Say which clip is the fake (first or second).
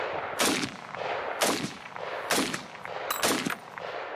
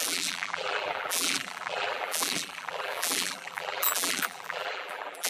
second